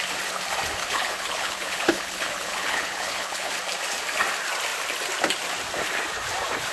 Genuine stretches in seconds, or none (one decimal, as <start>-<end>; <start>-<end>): 0.0-0.8; 3.5-6.7